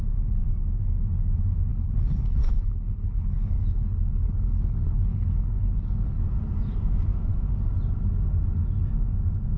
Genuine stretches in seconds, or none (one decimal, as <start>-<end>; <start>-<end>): 0.0-1.7; 6.2-9.6